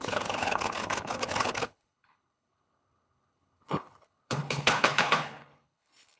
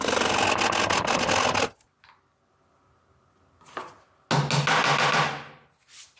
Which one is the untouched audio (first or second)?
second